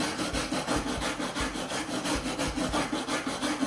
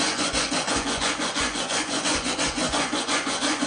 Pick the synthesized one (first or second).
second